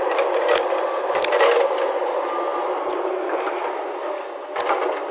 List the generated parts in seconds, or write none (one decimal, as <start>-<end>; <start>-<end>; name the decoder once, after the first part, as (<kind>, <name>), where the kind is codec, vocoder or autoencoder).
none